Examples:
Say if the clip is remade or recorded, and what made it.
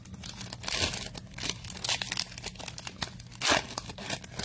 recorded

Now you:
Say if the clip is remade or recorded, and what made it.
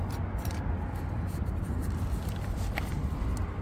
recorded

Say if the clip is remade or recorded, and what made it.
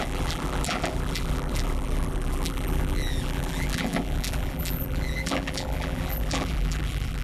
remade, vocoder, BigVGAN v2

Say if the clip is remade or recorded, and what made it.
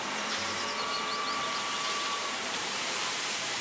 remade, vocoder, BigVGAN v2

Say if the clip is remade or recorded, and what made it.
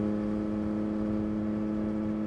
recorded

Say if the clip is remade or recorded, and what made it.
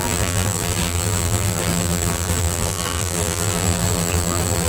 remade, vocoder, BigVGAN v2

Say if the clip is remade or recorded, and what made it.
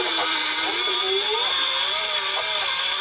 remade, vocoder, BigVGAN v2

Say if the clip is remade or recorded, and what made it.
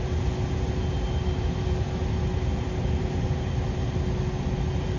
recorded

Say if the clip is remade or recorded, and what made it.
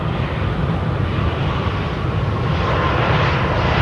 remade, vocoder, BigVGAN v2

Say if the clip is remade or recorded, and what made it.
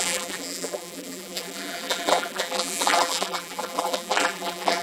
remade, vocoder, BigVGAN v2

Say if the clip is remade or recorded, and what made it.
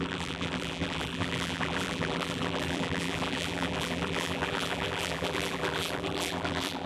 remade, vocoder, BigVGAN v2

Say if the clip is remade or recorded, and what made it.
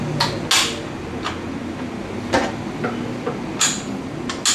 recorded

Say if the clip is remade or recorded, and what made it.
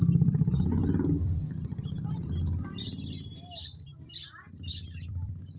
remade, vocoder, BigVGAN v2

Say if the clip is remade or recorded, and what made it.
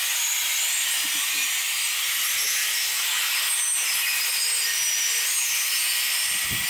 recorded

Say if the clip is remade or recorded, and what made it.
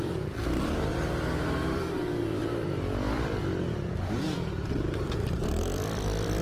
remade, vocoder, BigVGAN v2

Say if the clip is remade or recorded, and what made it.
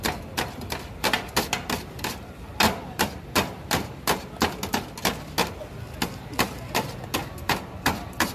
recorded